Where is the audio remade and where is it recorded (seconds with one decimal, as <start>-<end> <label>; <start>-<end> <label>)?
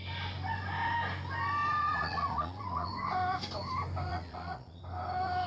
0.0-1.8 recorded; 1.8-2.9 remade; 2.9-4.1 recorded; 4.1-4.8 remade; 4.8-5.5 recorded